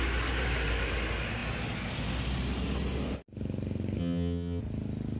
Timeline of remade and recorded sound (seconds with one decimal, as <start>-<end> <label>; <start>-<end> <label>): 0.0-4.0 recorded; 4.0-4.6 remade; 4.6-5.2 recorded